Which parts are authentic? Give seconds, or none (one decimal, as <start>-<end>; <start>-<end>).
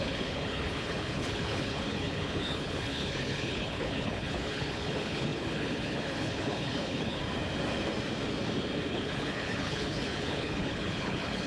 7.2-8.9